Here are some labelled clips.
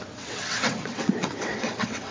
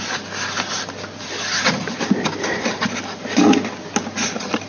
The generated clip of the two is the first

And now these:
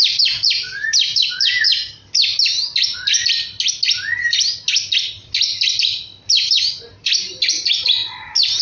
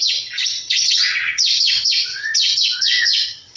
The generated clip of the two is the second